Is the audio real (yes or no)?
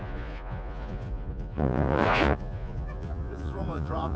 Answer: no